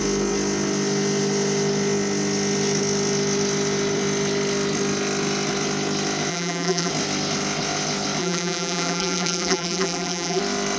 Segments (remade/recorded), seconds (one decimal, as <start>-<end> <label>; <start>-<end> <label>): 0.0-6.3 recorded; 6.3-6.9 remade; 6.9-8.2 recorded; 8.2-10.4 remade; 10.4-10.8 recorded